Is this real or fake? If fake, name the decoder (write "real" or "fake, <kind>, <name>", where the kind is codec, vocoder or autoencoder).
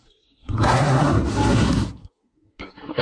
fake, codec, SNAC